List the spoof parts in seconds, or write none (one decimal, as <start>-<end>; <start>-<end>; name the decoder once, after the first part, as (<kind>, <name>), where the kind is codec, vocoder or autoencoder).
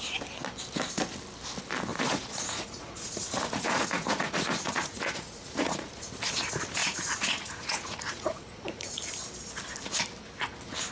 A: 1.9-6.1 (vocoder, Vocos); 6.8-9.1